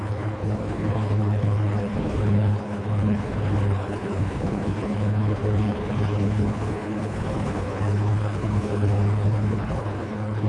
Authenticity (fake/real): fake